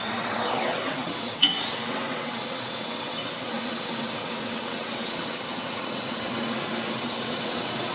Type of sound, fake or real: fake